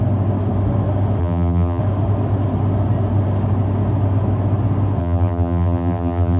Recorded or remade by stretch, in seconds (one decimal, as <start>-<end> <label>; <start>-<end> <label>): 0.0-1.2 recorded; 1.2-1.8 remade; 1.8-5.0 recorded; 5.0-6.4 remade